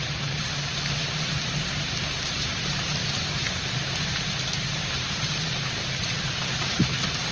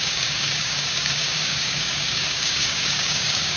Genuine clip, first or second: first